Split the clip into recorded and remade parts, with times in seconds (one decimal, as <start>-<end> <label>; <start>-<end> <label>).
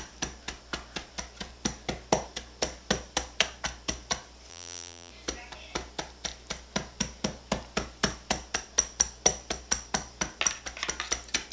0.0-4.5 recorded; 4.5-5.1 remade; 5.1-11.5 recorded